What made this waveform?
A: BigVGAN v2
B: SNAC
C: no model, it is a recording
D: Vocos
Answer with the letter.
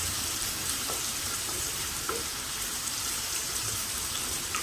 A